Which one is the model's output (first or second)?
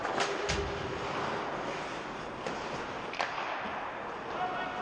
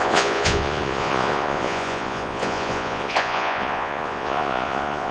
second